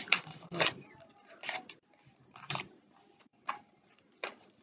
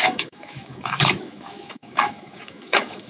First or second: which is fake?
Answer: second